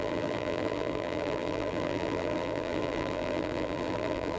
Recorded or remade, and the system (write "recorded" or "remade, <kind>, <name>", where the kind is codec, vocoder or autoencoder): remade, vocoder, BigVGAN v2